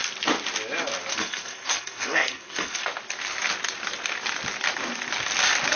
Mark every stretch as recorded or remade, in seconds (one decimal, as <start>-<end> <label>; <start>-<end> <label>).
0.0-1.1 recorded; 1.1-2.8 remade; 2.8-5.8 recorded